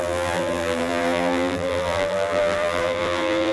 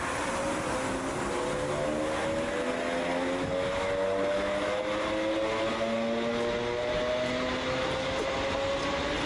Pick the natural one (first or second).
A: second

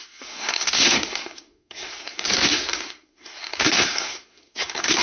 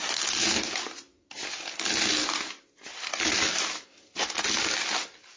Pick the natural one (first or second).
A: second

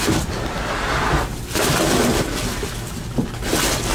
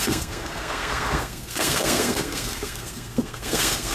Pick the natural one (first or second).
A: first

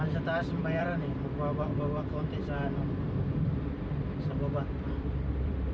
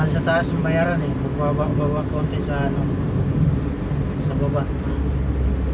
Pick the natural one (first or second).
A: second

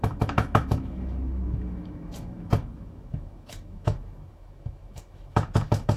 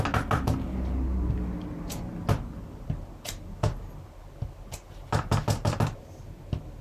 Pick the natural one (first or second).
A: second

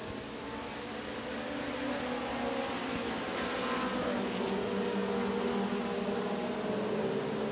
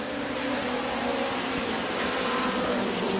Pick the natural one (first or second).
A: first